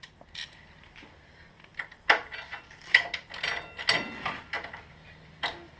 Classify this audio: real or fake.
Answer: real